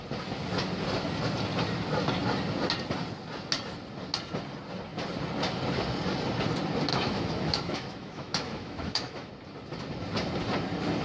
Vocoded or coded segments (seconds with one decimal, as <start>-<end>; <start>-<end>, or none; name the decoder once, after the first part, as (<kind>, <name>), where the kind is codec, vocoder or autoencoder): 6.9-9.3 (autoencoder, DAC-VAE)